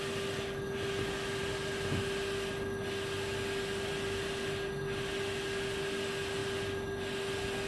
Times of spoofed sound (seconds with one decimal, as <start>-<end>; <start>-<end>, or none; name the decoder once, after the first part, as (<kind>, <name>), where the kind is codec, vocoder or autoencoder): 1.4-3.9 (vocoder, BigVGAN v2); 6.4-7.7